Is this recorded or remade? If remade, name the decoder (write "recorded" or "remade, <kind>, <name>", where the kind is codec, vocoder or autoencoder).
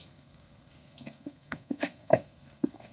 remade, codec, SNAC